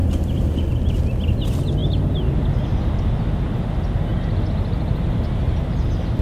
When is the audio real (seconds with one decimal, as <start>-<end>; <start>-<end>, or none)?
0.6-6.2